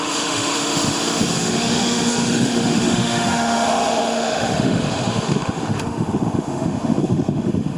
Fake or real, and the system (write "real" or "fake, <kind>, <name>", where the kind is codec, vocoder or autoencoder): fake, autoencoder, DAC-VAE